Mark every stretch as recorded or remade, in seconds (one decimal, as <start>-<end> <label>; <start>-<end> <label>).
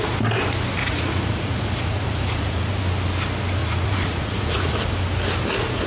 0.0-0.8 recorded; 0.8-2.8 remade; 2.8-3.6 recorded; 3.6-4.9 remade; 4.9-5.9 recorded